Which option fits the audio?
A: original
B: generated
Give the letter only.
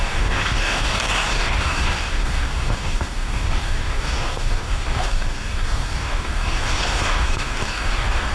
B